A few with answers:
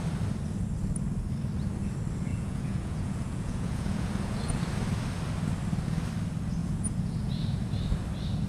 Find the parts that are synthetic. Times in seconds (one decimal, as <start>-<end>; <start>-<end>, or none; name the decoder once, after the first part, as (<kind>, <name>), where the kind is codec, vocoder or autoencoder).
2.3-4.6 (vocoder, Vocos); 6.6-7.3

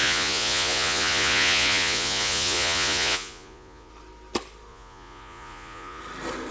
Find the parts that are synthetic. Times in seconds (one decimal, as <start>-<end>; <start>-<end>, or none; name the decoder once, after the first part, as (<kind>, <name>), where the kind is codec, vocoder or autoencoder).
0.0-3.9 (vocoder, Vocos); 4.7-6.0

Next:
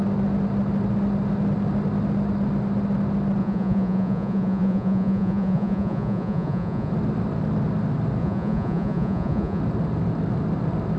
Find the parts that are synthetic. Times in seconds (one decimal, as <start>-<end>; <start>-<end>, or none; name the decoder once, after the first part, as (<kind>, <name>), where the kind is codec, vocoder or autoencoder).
3.4-6.9 (vocoder, Vocos); 8.2-9.6

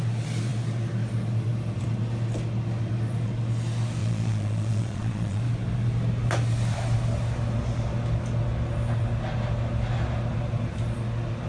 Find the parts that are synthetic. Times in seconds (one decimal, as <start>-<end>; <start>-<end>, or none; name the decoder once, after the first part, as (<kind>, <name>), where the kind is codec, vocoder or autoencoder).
4.0-5.4 (vocoder, Vocos)